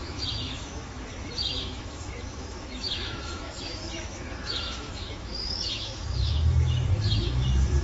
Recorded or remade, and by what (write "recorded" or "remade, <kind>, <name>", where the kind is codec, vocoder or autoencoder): remade, autoencoder, DAC-VAE